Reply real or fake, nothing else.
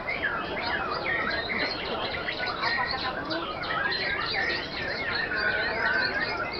fake